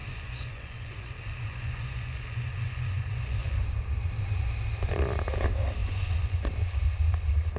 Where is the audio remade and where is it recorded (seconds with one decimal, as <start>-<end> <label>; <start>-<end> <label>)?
0.0-3.6 remade; 3.6-5.8 recorded; 5.8-6.5 remade; 6.5-7.6 recorded